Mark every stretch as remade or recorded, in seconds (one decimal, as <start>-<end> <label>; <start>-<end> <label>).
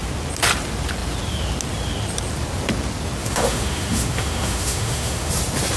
0.0-3.2 recorded; 3.2-5.3 remade; 5.3-5.8 recorded